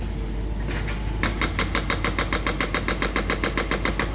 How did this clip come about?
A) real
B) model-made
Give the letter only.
A